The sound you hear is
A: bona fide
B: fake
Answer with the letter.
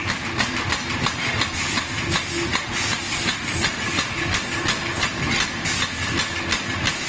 A